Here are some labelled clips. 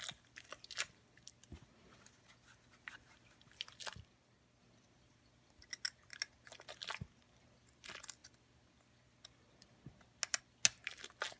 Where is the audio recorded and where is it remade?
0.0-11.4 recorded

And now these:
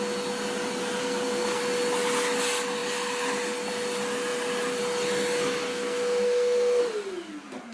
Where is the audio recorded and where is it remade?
0.0-1.0 recorded; 1.0-1.6 remade; 1.6-5.7 recorded; 5.7-6.8 remade; 6.8-7.7 recorded

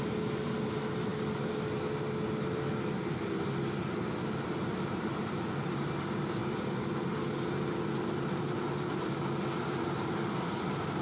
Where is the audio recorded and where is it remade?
0.0-11.0 recorded

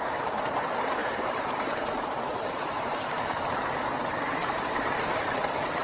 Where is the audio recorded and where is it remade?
0.0-1.0 recorded; 1.0-3.4 remade; 3.4-4.4 recorded; 4.4-5.1 remade; 5.1-5.8 recorded

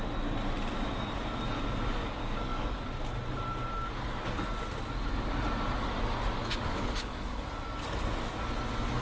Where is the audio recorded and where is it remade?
0.0-2.0 recorded; 2.0-2.8 remade; 2.8-6.4 recorded; 6.4-7.5 remade; 7.5-9.0 recorded

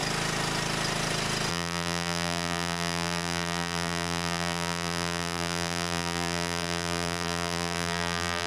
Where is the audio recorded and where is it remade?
0.0-1.5 recorded; 1.5-8.5 remade

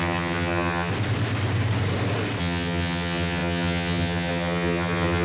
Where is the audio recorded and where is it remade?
0.0-0.9 remade; 0.9-2.4 recorded; 2.4-5.2 remade